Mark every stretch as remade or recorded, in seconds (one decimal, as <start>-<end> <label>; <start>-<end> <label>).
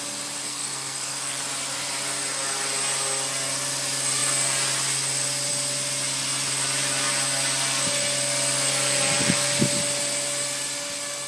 0.0-0.5 recorded; 0.5-1.4 remade; 1.4-11.3 recorded